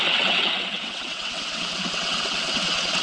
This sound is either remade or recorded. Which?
remade